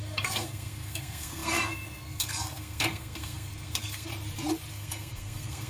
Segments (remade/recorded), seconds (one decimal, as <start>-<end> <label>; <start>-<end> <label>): 0.0-4.1 remade; 4.1-4.7 recorded; 4.7-5.7 remade